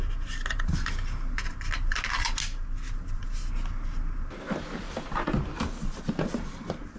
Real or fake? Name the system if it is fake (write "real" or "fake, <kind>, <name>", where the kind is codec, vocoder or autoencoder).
real